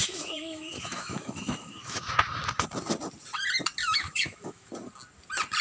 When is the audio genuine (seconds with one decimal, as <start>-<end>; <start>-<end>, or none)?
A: 2.1-3.8; 4.7-5.6